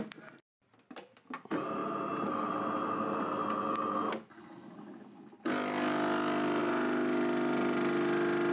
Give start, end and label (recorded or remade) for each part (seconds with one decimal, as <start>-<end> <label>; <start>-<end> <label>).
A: 0.0-8.5 recorded